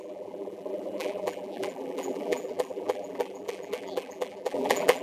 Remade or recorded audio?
remade